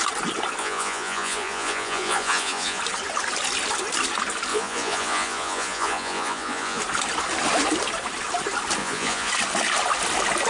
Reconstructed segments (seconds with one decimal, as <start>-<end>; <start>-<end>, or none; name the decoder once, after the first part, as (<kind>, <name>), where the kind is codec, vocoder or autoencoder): 0.6-2.8 (vocoder, Vocos); 4.5-6.8; 8.8-9.3